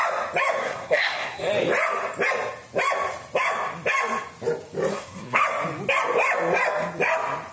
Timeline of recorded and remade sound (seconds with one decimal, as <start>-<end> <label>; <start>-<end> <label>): 0.0-0.6 recorded; 0.6-1.5 remade; 1.5-4.9 recorded; 4.9-5.4 remade; 5.4-7.5 recorded